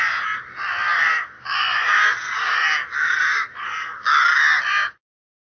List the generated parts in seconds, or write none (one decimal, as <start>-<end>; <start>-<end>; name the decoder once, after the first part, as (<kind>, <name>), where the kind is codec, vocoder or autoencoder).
none